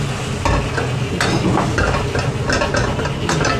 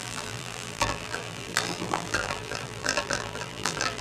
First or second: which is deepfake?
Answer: second